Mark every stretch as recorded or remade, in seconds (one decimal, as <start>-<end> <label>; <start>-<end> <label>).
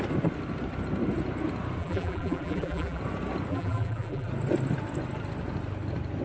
0.0-1.8 recorded; 1.8-3.0 remade; 3.0-3.5 recorded; 3.5-4.3 remade; 4.3-6.2 recorded